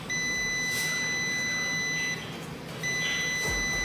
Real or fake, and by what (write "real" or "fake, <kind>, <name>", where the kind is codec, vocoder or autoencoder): real